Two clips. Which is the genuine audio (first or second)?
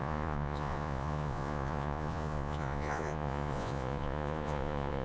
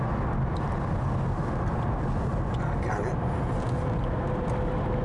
second